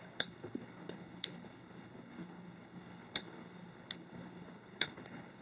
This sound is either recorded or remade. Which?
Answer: remade